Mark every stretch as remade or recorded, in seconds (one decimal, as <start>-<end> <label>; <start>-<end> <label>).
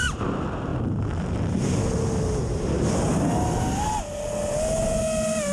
0.0-5.5 recorded